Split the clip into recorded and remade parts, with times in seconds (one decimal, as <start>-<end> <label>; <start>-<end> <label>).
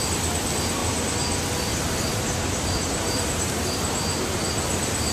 0.0-2.1 recorded; 2.1-3.9 remade; 3.9-5.1 recorded